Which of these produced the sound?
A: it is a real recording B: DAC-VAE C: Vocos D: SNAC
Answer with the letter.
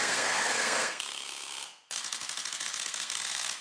D